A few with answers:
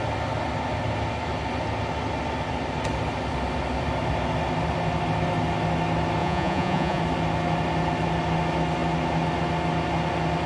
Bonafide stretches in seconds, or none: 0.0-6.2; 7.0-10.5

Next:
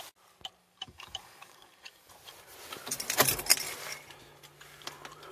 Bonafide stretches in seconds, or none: 0.0-0.6; 2.1-5.3